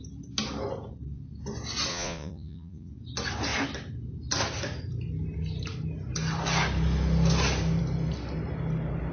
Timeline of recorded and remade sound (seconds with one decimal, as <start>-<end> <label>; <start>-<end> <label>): 0.0-1.9 recorded; 1.9-2.9 remade; 2.9-9.1 recorded

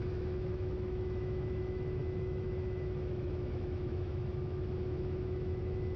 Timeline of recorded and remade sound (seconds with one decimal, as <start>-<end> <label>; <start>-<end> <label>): 0.0-6.0 remade

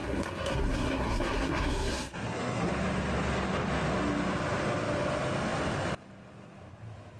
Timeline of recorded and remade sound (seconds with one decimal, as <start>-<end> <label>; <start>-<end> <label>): 0.0-2.7 remade; 2.7-7.2 recorded

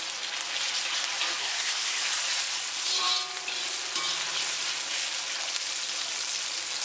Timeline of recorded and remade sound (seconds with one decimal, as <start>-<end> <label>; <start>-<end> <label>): 0.0-1.4 recorded; 1.4-2.0 remade; 2.0-6.8 recorded

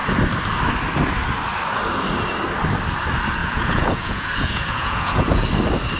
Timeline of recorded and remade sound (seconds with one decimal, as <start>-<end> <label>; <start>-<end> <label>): 0.0-3.4 recorded; 3.4-5.5 remade; 5.5-6.0 recorded